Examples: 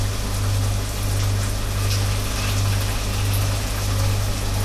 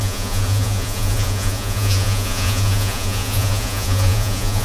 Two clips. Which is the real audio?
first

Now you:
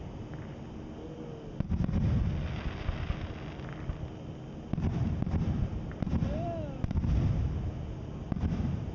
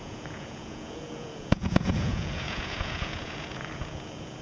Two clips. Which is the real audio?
first